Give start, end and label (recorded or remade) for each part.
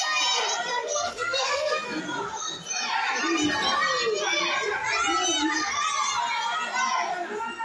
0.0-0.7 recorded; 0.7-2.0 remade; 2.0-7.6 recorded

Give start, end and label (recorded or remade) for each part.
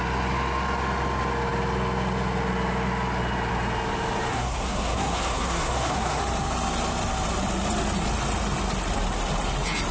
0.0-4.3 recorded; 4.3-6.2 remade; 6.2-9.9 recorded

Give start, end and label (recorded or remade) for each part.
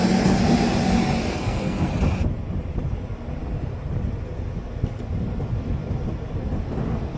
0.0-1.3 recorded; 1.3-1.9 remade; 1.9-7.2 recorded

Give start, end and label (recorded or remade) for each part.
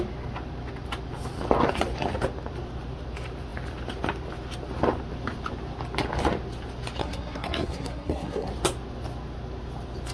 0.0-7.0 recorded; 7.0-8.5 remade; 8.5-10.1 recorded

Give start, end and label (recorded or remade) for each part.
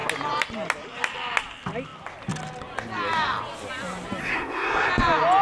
0.0-4.2 recorded; 4.2-4.9 remade; 4.9-5.4 recorded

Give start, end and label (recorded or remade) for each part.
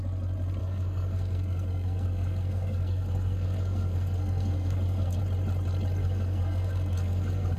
0.0-0.6 recorded; 0.6-5.2 remade; 5.2-6.0 recorded; 6.0-7.6 remade